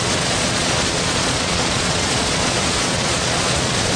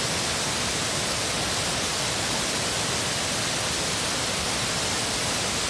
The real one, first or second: second